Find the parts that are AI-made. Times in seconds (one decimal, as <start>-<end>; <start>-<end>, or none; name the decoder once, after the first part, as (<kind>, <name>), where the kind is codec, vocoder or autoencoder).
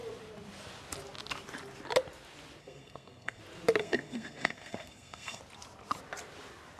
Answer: 2.6-3.4 (codec, SNAC); 3.8-5.4